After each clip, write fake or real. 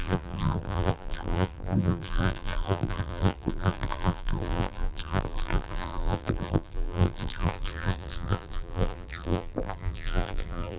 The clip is fake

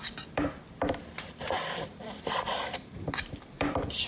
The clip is fake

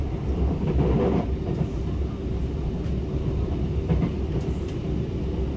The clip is real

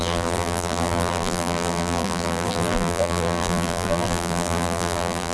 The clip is fake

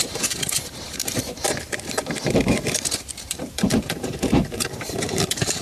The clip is fake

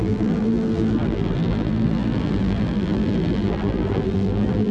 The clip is fake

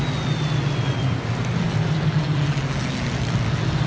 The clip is real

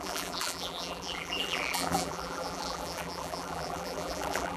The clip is fake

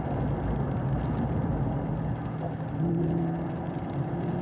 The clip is real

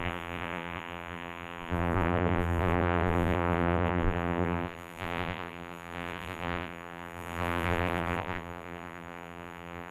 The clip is fake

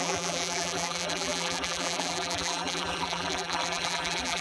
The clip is fake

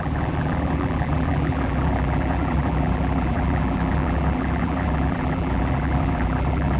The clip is fake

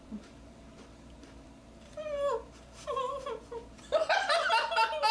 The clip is fake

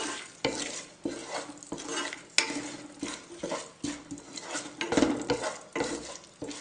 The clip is real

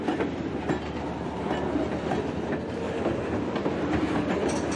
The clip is real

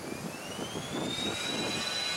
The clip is real